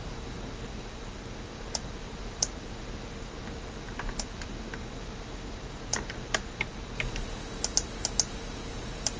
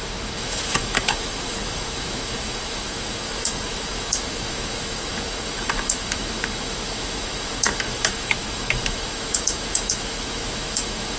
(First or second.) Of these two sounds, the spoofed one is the second